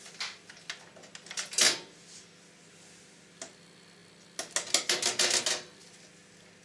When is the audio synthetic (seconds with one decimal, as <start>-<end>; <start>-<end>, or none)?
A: none